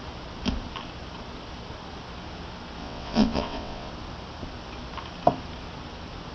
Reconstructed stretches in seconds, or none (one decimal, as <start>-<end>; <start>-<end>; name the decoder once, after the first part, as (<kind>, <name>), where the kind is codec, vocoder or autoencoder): 2.8-3.9 (vocoder, WaveNeXt)